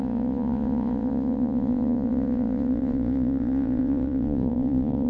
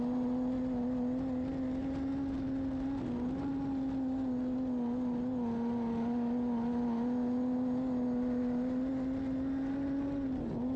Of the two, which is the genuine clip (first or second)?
second